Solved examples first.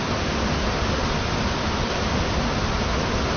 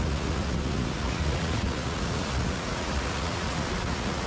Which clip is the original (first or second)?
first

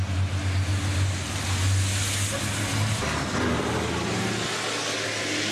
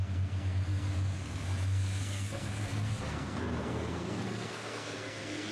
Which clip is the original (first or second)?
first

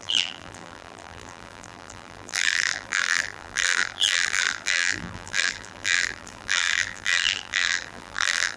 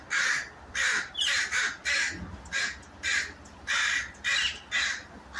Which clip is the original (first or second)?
second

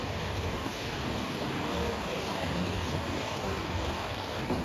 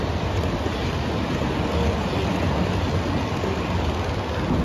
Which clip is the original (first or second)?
second